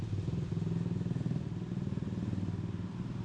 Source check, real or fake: real